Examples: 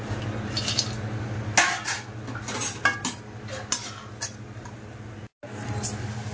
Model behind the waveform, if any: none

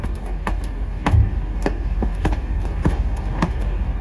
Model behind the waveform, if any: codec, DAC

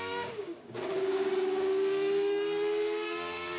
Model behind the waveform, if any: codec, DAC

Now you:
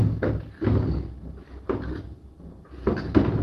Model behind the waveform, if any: none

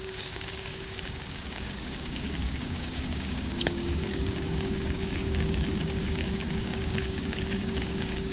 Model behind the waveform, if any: codec, DAC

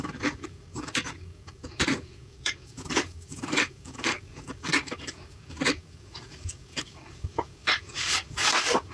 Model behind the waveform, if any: codec, DAC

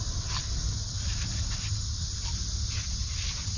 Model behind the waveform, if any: none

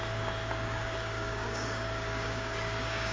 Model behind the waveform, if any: codec, DAC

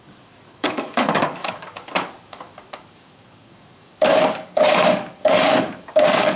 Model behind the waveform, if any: codec, DAC